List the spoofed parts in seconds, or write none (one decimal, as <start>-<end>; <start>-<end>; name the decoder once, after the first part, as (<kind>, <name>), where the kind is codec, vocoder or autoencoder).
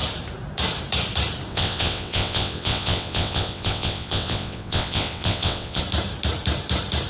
1.5-5.8 (vocoder, WaveNeXt)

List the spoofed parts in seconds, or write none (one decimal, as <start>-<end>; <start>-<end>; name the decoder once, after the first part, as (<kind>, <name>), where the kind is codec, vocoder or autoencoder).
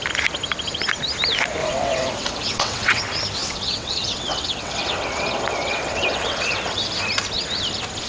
1.6-3.0 (vocoder, WaveNeXt); 3.4-6.9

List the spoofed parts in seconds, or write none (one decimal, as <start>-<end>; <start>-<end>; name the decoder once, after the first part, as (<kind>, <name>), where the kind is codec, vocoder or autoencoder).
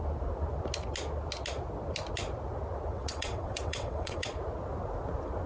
2.9-4.3 (vocoder, WaveNeXt)